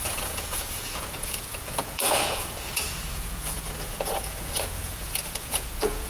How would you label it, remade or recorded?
remade